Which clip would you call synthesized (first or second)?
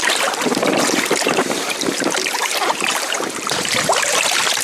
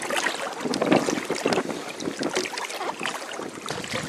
first